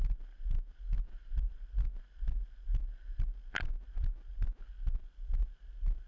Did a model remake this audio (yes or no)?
no